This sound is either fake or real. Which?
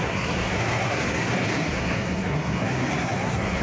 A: fake